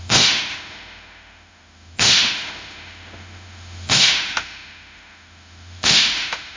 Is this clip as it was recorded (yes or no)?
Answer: no